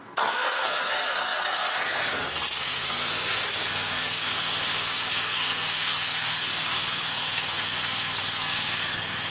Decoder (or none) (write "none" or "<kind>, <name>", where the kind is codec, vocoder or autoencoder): codec, SNAC